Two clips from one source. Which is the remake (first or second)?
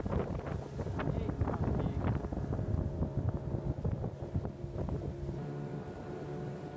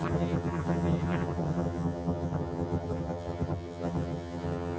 second